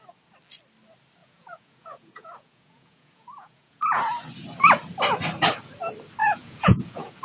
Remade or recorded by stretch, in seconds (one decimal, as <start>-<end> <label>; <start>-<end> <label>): 0.0-1.2 recorded; 1.2-4.0 remade; 4.0-6.2 recorded; 6.2-7.2 remade